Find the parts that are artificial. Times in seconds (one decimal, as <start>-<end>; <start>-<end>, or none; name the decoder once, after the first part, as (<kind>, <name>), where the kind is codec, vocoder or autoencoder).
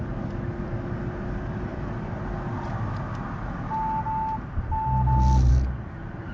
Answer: none